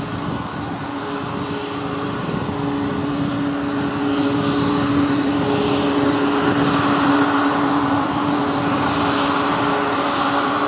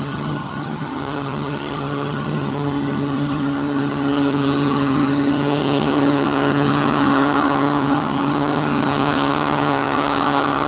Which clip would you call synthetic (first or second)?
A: second